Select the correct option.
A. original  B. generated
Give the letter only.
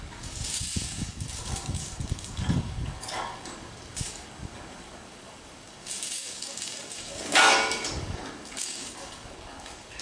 B